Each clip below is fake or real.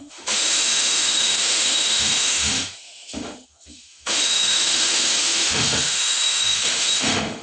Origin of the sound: fake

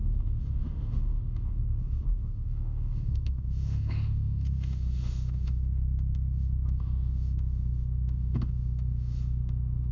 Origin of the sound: fake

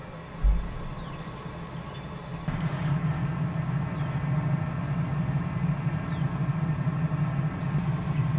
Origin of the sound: real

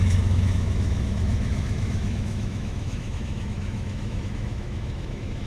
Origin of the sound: fake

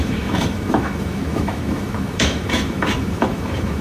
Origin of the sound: fake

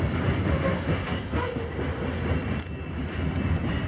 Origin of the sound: real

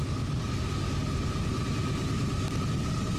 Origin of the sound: real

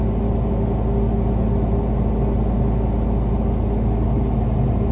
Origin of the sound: real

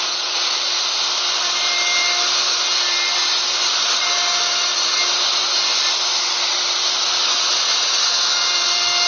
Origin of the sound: real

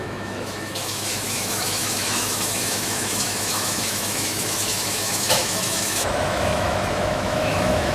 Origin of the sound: fake